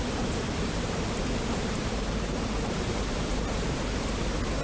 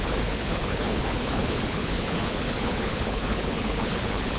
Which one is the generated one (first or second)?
second